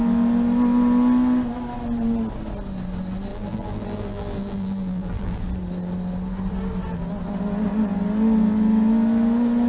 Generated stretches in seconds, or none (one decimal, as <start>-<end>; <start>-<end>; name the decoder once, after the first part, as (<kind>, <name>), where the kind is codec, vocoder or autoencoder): 3.3-5.4 (vocoder, BigVGAN v2)